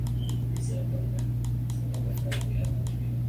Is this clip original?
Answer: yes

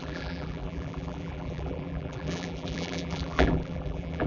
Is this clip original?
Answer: no